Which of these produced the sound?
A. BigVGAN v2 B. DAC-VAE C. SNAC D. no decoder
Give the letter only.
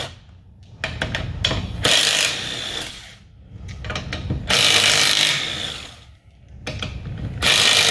D